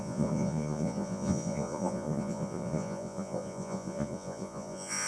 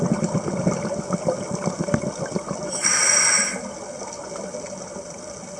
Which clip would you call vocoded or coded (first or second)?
first